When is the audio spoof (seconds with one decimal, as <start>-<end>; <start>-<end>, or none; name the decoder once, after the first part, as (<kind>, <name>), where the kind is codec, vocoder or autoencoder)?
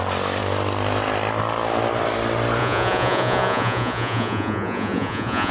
2.6-5.5 (vocoder, Vocos)